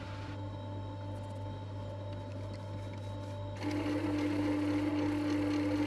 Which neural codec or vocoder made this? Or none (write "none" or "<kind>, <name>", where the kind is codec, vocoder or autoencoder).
none